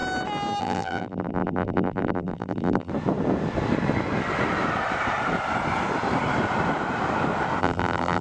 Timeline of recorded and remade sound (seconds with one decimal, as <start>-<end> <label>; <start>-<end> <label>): 0.0-0.6 recorded; 0.6-2.9 remade; 2.9-7.6 recorded; 7.6-8.2 remade